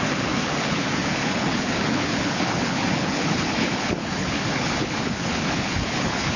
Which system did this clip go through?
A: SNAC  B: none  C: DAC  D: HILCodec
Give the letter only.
D